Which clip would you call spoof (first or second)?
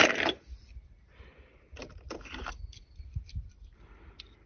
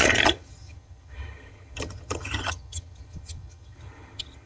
second